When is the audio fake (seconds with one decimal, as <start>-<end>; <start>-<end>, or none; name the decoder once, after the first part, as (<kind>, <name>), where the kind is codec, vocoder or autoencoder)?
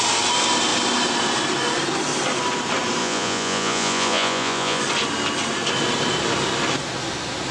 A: 3.0-4.8 (vocoder, Vocos)